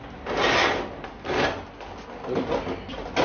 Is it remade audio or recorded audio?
recorded